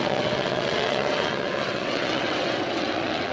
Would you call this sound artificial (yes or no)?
yes